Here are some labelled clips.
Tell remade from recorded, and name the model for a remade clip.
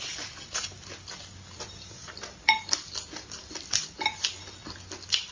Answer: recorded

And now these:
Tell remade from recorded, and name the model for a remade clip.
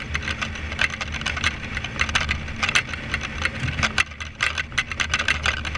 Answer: recorded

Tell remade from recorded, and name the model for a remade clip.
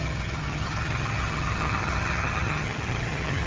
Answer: remade, vocoder, HiFi-GAN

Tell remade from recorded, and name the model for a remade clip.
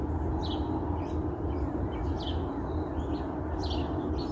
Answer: recorded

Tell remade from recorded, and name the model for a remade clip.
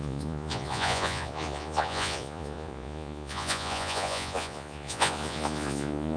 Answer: remade, vocoder, Vocos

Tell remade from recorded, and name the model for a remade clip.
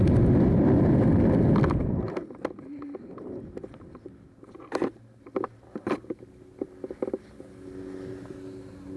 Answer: recorded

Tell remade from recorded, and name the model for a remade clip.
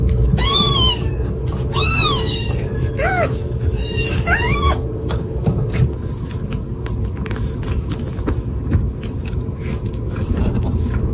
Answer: remade, codec, DAC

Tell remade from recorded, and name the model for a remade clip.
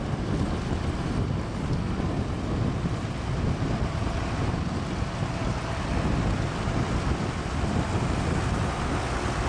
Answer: recorded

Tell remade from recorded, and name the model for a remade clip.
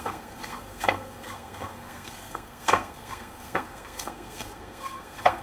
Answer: remade, codec, SNAC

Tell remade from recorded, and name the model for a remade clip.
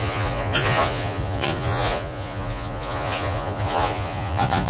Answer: remade, vocoder, Vocos